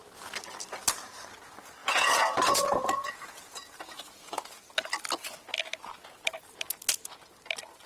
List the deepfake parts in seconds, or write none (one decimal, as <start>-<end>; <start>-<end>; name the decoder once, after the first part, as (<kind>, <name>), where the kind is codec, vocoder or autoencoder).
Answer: 1.8-4.6 (vocoder, Vocos)